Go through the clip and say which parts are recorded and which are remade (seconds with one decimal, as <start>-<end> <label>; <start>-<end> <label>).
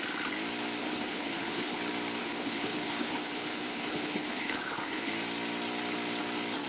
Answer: 0.0-0.8 recorded; 0.8-1.8 remade; 1.8-2.2 recorded; 2.2-5.1 remade; 5.1-6.7 recorded